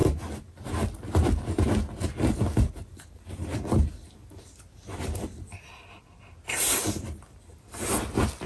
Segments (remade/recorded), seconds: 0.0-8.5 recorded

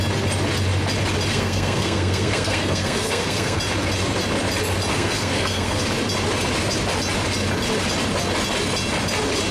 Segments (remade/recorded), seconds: 0.0-1.3 recorded; 1.3-3.6 remade; 3.6-4.9 recorded; 4.9-5.8 remade; 5.8-9.5 recorded

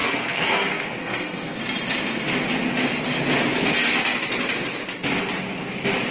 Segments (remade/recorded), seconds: 0.0-1.6 remade; 1.6-6.1 recorded

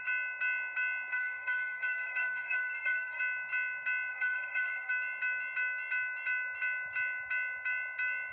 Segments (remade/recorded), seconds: 0.0-1.1 recorded; 1.1-3.2 remade; 3.2-4.1 recorded; 4.1-4.9 remade; 4.9-8.3 recorded

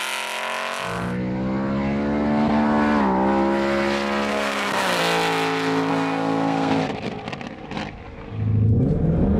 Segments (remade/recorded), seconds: 0.0-4.3 recorded; 4.3-5.0 remade; 5.0-5.9 recorded; 5.9-6.8 remade; 6.8-9.4 recorded

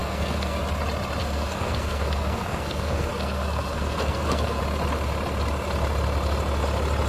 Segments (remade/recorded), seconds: 0.0-0.6 remade; 0.6-1.2 recorded; 1.2-4.6 remade; 4.6-7.1 recorded

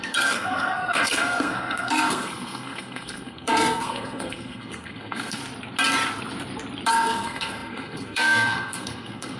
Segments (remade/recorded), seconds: 0.0-5.4 remade; 5.4-6.9 recorded; 6.9-9.4 remade